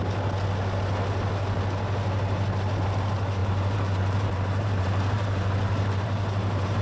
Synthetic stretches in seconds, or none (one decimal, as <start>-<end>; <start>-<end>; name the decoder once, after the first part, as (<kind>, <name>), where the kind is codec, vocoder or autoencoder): 3.4-6.8 (vocoder, BigVGAN v2)